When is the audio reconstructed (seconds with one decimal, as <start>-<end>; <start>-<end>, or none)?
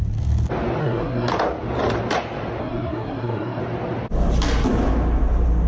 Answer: 0.8-1.3; 2.6-3.6